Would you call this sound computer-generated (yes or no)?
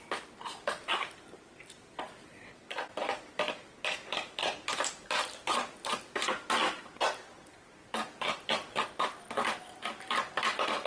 no